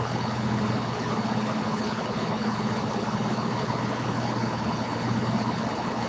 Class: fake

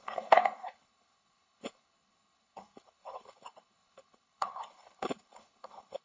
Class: fake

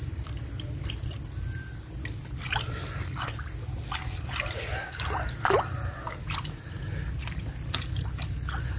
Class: real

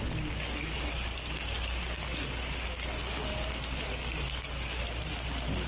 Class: real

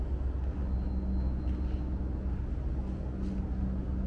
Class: real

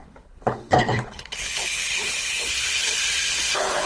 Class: fake